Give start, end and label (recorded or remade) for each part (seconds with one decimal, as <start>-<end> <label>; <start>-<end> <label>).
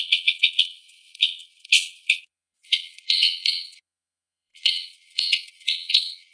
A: 0.0-6.3 remade